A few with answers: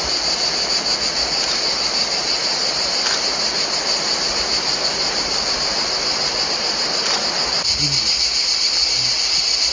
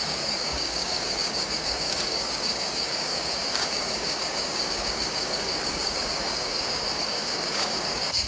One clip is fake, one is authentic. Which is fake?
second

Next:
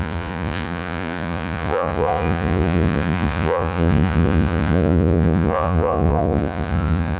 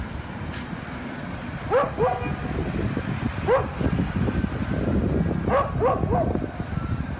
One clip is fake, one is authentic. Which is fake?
first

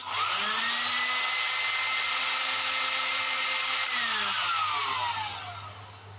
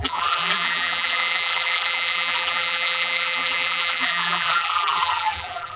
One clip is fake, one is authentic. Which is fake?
second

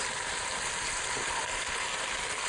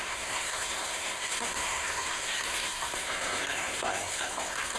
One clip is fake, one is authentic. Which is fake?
second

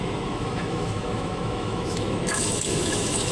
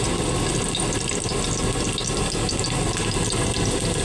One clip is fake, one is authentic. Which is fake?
first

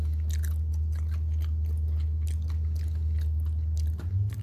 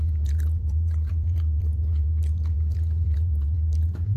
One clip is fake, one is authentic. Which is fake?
second